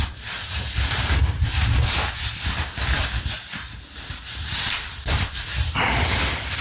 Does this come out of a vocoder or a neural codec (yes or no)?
no